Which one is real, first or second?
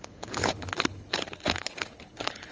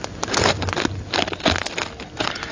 second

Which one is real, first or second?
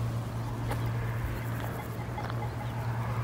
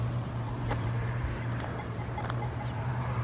first